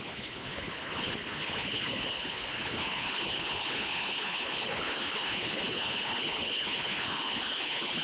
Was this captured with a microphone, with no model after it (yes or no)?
no